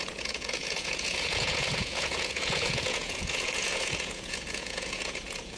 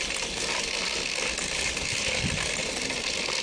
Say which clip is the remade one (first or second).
first